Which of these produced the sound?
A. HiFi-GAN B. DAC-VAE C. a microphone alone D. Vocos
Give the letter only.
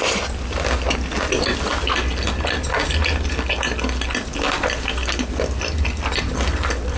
C